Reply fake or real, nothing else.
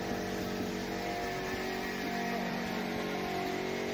real